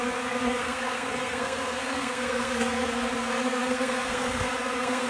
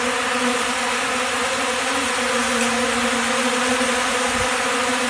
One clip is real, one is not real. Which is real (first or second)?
second